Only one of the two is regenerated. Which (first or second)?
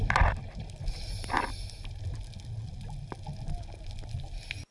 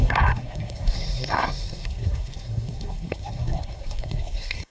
second